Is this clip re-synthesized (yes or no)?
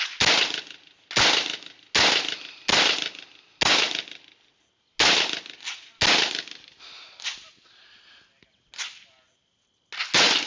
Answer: no